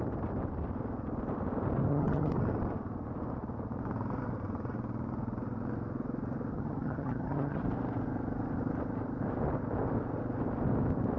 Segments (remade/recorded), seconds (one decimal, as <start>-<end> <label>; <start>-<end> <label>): 0.0-1.9 recorded; 1.9-2.4 remade; 2.4-6.5 recorded; 6.5-7.6 remade; 7.6-11.2 recorded